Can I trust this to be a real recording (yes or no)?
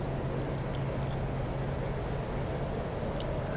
yes